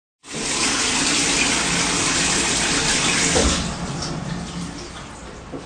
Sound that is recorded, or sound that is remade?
recorded